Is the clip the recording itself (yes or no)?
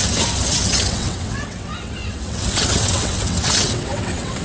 no